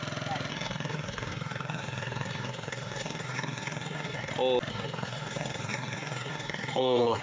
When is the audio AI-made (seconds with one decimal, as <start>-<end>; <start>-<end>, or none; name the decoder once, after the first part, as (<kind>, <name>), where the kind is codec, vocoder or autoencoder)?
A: 0.5-4.3 (codec, SNAC); 4.7-7.2